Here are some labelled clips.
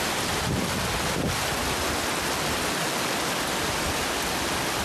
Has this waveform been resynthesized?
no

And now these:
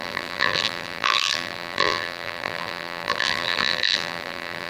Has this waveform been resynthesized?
yes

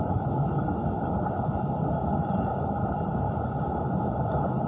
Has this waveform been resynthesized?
no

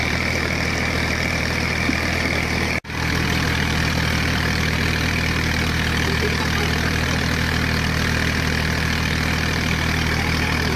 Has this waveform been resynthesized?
yes